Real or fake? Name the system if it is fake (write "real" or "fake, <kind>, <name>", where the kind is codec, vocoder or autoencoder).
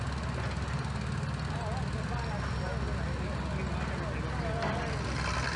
real